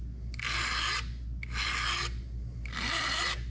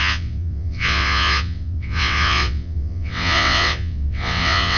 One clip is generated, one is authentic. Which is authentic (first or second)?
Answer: first